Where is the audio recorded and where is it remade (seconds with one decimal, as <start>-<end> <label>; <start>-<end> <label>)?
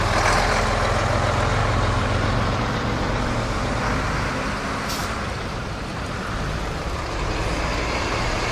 0.0-1.6 recorded; 1.6-2.6 remade; 2.6-5.0 recorded; 5.0-8.5 remade